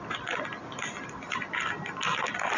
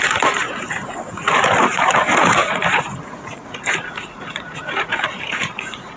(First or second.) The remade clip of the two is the second